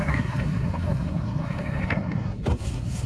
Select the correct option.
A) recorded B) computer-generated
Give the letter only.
B